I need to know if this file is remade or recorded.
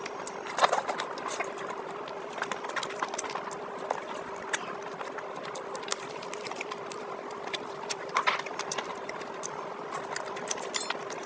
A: recorded